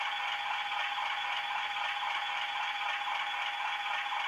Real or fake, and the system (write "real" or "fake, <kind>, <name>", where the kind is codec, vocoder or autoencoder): real